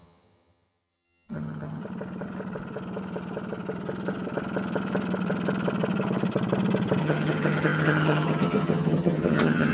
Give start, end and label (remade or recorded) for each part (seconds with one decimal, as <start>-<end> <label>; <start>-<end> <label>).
0.0-1.8 remade; 1.8-7.0 recorded; 7.0-9.7 remade